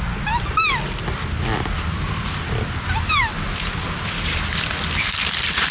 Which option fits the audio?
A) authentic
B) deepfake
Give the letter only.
A